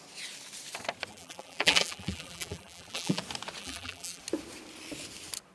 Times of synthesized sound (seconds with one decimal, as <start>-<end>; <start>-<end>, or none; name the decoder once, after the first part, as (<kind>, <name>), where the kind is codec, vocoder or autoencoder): 1.1-3.2 (vocoder, BigVGAN v2); 3.6-4.2

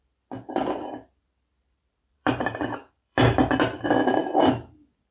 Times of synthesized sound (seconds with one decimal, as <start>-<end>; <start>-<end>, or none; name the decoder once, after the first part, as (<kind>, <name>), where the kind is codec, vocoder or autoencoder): 1.5-3.5 (vocoder, BigVGAN v2)

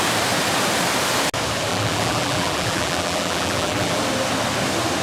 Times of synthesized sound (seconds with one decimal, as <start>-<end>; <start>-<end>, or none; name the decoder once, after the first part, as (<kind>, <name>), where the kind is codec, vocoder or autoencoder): 1.7-4.0 (vocoder, BigVGAN v2)

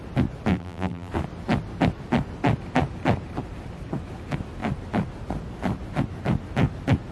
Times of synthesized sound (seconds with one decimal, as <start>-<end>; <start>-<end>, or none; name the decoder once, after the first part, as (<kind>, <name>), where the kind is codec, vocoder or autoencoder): 0.5-1.1 (vocoder, BigVGAN v2)

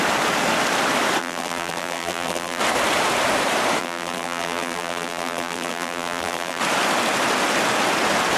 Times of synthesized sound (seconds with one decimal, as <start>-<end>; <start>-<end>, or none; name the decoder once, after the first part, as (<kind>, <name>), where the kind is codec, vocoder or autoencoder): 1.2-2.6 (vocoder, BigVGAN v2); 3.8-6.6

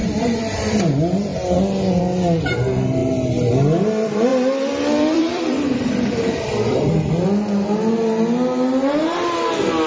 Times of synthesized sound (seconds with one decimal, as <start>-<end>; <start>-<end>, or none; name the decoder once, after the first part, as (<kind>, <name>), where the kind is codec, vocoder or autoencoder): 0.0-0.8 (vocoder, BigVGAN v2); 4.3-7.1

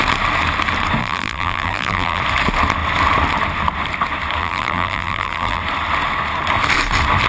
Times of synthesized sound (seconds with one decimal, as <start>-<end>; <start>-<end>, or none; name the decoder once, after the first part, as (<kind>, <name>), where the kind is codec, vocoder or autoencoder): 1.0-2.2 (vocoder, BigVGAN v2); 4.4-5.6